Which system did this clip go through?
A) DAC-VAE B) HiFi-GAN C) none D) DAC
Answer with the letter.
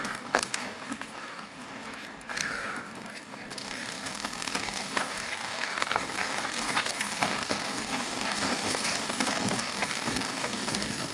D